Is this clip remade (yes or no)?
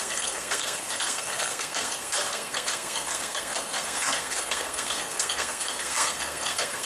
yes